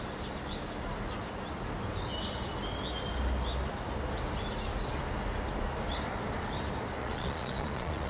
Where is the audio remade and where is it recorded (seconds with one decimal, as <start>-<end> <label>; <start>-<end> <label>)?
0.0-7.0 recorded; 7.0-8.1 remade